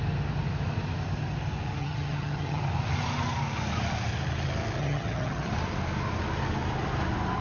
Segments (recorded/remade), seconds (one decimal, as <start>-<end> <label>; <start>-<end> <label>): 0.0-1.8 recorded; 1.8-2.6 remade; 2.6-4.8 recorded; 4.8-5.5 remade; 5.5-7.4 recorded